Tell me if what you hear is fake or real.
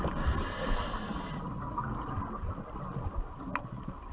real